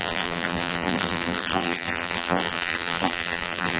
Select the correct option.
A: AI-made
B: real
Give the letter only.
A